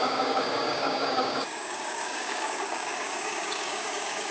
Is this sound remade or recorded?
remade